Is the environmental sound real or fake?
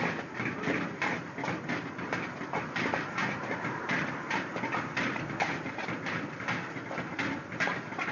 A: real